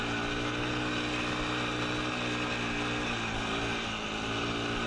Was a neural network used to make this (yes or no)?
no